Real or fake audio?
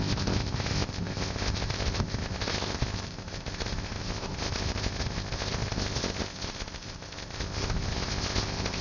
fake